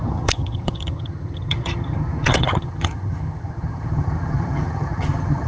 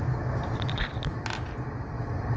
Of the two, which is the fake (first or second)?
first